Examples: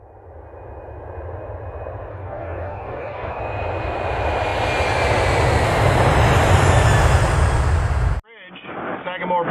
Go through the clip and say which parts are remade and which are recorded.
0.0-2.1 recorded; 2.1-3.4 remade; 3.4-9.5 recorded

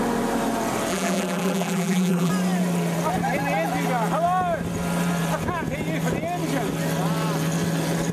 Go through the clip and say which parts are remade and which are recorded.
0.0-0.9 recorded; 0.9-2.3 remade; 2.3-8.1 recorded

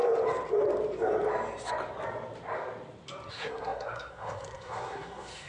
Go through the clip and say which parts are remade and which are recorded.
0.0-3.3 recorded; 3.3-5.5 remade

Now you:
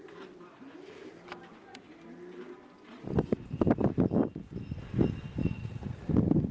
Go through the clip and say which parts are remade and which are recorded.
0.0-5.4 recorded; 5.4-6.1 remade; 6.1-6.5 recorded